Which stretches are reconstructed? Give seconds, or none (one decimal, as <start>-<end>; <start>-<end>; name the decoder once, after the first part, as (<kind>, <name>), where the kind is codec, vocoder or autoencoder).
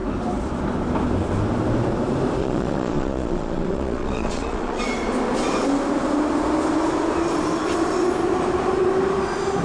2.4-4.8 (vocoder, Vocos)